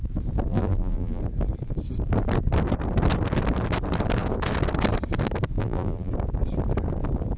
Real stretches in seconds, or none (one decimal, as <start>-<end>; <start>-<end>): 0.0-0.5; 1.2-5.6; 6.1-7.4